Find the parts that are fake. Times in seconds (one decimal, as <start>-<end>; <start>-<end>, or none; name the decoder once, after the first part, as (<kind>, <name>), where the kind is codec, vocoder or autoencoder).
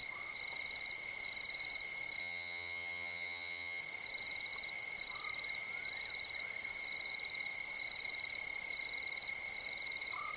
2.2-3.8 (vocoder, HiFi-GAN)